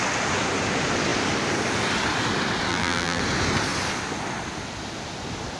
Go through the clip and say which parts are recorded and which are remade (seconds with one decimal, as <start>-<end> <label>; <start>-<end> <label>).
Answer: 0.0-2.7 recorded; 2.7-3.2 remade; 3.2-5.6 recorded